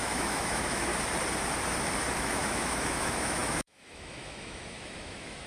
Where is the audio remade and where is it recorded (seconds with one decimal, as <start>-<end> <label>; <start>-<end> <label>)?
0.0-0.9 remade; 0.9-2.1 recorded; 2.1-5.5 remade